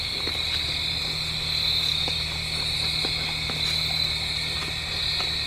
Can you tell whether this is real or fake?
real